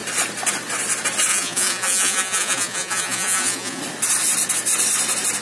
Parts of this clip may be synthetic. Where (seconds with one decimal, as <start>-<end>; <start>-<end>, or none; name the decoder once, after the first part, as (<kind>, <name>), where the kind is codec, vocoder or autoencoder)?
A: 1.3-3.8 (vocoder, Vocos)